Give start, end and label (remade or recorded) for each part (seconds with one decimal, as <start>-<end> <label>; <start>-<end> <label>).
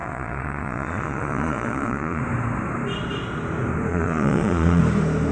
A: 0.0-2.2 remade; 2.2-3.9 recorded; 3.9-4.8 remade; 4.8-5.3 recorded